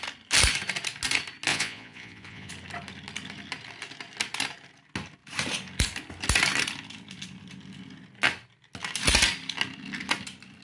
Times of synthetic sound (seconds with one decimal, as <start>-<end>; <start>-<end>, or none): 1.5-2.5